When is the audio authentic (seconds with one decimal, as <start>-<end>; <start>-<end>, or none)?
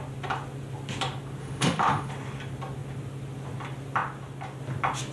0.0-1.4; 2.1-5.1